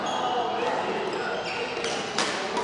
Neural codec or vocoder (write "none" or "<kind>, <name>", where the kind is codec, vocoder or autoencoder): none